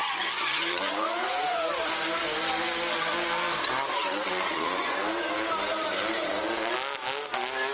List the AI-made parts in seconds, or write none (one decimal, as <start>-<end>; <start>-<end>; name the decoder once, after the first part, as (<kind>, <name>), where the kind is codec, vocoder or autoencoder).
0.0-1.7 (vocoder, Vocos); 4.1-5.0